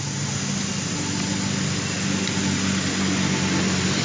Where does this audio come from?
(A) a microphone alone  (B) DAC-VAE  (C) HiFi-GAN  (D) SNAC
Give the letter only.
A